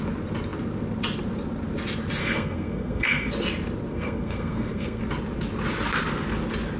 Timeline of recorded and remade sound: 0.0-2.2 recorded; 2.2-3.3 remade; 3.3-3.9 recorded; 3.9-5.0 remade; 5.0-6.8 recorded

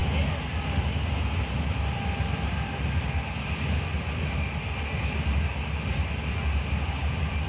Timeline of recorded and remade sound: 0.0-7.5 recorded

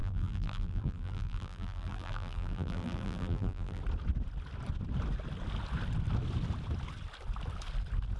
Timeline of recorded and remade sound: 0.0-3.8 remade; 3.8-8.2 recorded

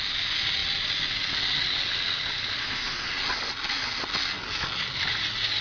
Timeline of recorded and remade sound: 0.0-2.6 recorded; 2.6-3.1 remade; 3.1-5.6 recorded

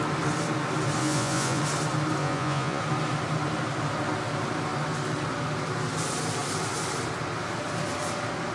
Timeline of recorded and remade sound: 0.0-1.0 recorded; 1.0-1.6 remade; 1.6-2.2 recorded; 2.2-2.8 remade; 2.8-8.5 recorded

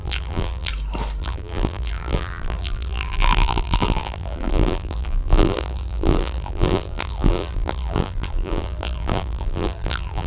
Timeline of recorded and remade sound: 0.0-0.7 remade; 0.7-1.2 recorded; 1.2-10.3 remade